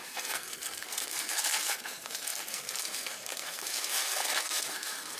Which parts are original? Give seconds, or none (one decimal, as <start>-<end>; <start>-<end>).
none